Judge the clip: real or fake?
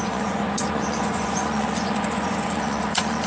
fake